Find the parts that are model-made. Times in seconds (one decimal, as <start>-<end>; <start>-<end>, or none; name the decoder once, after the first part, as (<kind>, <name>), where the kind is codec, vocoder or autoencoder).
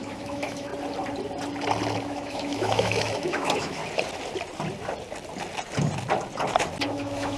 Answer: 0.0-0.7 (autoencoder, DAC-VAE); 2.0-3.8; 6.9-7.4